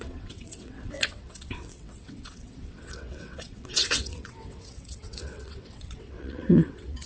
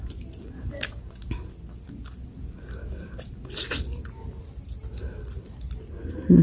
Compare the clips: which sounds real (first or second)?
second